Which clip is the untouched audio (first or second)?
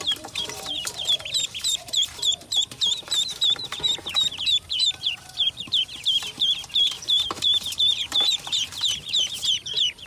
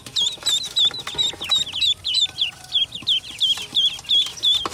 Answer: second